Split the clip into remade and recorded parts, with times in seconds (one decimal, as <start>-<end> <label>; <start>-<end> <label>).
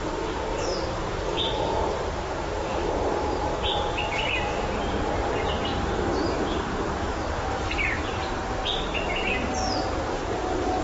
0.0-10.8 remade